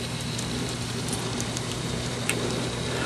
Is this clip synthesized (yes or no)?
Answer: yes